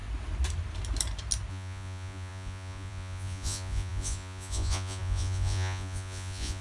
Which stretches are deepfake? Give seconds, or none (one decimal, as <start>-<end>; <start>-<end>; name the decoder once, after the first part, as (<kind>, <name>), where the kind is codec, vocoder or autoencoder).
1.5-6.6 (vocoder, Vocos)